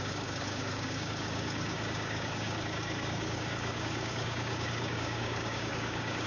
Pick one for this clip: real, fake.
fake